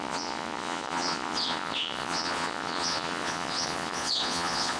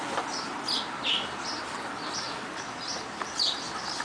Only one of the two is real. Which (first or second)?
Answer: second